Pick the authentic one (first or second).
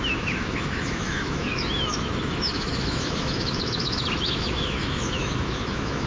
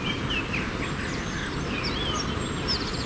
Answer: second